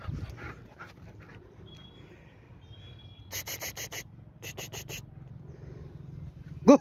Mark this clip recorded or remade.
recorded